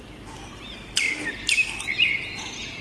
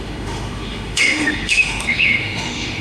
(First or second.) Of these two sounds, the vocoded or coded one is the second